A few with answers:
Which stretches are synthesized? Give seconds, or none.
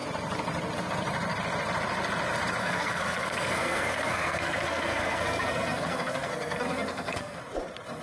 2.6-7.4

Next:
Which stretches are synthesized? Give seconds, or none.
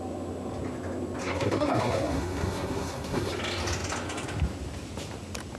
1.2-3.3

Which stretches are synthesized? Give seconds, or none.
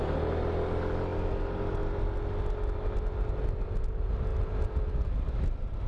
none